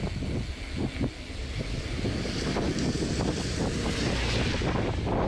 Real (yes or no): yes